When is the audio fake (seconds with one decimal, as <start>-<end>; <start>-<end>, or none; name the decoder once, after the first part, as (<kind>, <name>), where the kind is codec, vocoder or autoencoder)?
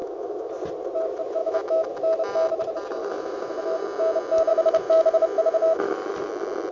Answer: 0.0-0.5 (autoencoder, DAC-VAE); 1.4-1.9; 3.0-3.8; 4.5-6.3